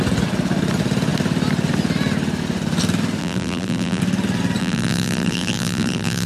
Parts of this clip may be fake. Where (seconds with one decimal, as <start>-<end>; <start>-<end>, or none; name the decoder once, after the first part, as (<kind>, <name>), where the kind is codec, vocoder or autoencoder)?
3.2-4.0 (vocoder, BigVGAN v2); 4.6-6.3